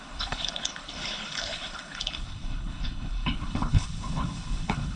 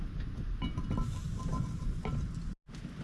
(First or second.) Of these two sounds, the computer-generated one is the first